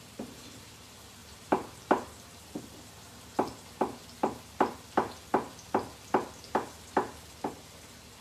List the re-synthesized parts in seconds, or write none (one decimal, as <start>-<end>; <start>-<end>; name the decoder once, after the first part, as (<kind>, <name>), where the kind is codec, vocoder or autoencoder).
1.2-2.0 (vocoder, BigVGAN v2)